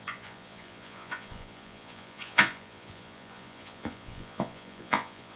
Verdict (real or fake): fake